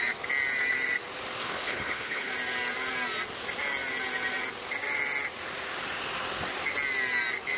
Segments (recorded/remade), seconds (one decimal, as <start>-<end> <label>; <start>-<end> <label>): 0.0-1.4 recorded; 1.4-2.3 remade; 2.3-7.6 recorded